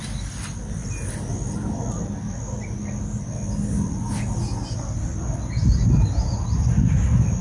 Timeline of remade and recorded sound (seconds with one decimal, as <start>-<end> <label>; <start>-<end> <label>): 0.0-7.4 recorded